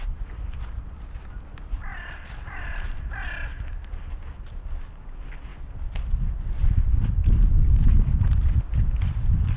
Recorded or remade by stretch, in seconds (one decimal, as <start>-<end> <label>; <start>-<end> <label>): 0.0-7.2 recorded; 7.2-8.6 remade; 8.6-9.6 recorded